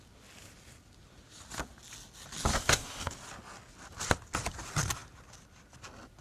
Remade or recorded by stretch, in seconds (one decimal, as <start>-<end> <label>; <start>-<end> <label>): 0.0-2.5 recorded; 2.5-3.1 remade; 3.1-6.2 recorded